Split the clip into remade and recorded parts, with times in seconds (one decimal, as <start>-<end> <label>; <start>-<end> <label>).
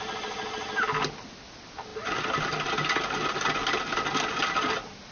0.0-5.1 recorded